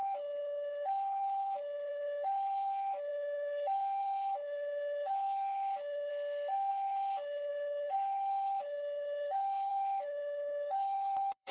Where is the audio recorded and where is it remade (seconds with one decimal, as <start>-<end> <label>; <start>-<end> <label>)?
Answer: 0.0-6.1 remade; 6.1-6.7 recorded; 6.7-11.5 remade